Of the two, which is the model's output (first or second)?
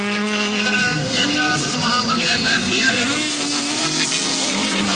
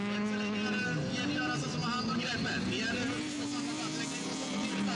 first